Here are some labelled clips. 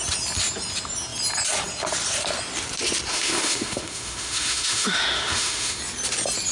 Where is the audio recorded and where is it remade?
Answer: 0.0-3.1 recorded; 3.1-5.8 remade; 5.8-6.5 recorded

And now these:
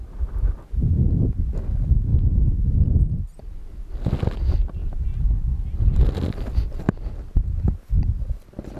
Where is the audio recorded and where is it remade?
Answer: 0.0-8.8 recorded

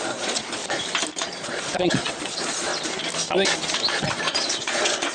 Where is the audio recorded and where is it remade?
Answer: 0.0-0.6 remade; 0.6-1.2 recorded; 1.2-2.7 remade; 2.7-3.7 recorded; 3.7-5.1 remade

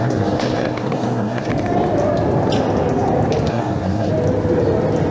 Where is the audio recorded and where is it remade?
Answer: 0.0-1.5 remade; 1.5-3.5 recorded; 3.5-4.1 remade; 4.1-5.1 recorded